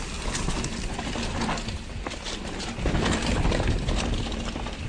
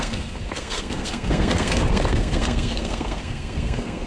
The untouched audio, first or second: first